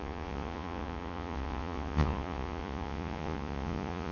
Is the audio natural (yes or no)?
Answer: no